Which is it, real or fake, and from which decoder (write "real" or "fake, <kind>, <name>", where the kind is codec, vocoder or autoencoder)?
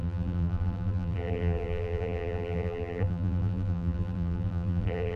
fake, vocoder, BigVGAN v2